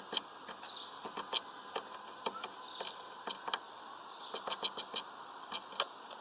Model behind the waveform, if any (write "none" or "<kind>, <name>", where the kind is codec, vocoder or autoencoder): none